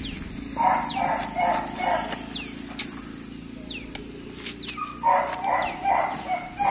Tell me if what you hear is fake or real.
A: real